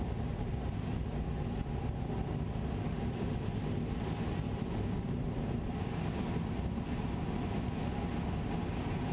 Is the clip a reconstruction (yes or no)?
no